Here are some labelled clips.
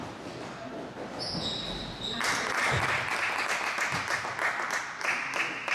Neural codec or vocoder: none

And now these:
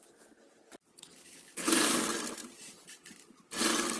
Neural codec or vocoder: none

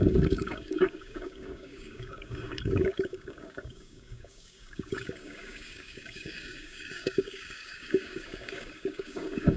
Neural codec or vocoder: codec, DAC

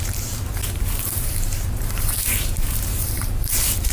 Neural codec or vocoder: vocoder, BigVGAN v2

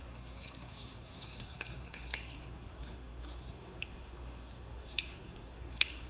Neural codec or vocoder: codec, SNAC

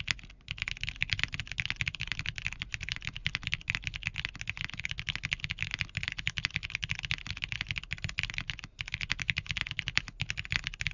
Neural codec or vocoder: none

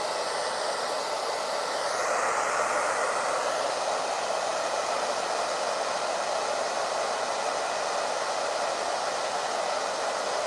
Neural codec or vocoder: none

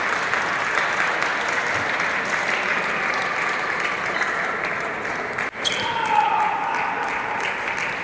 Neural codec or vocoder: none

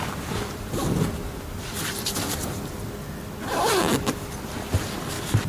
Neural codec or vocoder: none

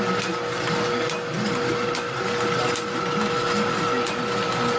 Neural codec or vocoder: none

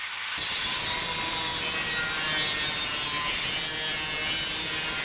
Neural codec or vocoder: none